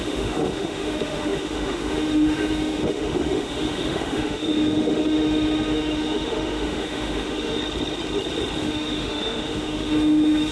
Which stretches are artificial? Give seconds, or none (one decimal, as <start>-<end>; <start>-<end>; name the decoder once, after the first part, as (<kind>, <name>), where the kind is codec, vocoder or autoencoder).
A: 0.0-7.6 (autoencoder, DAC-VAE); 8.6-10.5